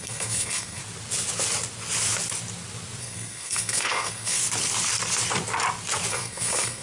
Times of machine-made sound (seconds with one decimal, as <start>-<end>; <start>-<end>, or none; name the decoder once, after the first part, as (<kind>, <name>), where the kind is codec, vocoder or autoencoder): 0.0-0.8 (codec, SNAC); 3.0-4.4; 6.1-6.8